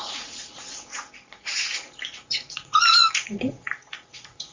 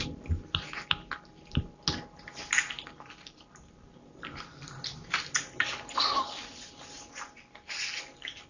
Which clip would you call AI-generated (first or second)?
first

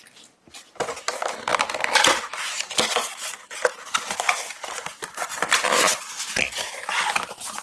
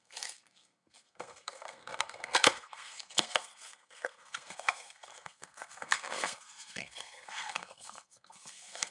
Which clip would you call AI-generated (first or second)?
second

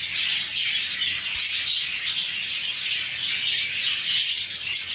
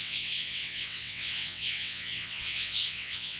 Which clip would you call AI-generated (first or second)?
second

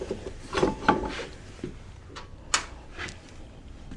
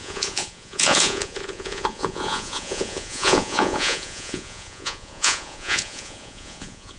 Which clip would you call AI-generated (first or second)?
second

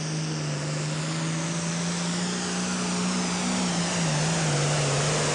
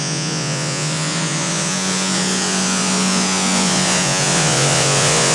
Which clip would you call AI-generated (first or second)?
second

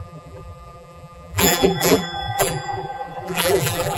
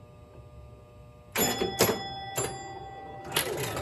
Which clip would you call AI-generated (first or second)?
first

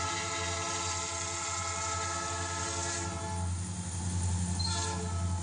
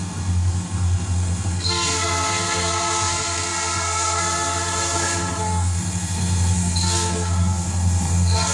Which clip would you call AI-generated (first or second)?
second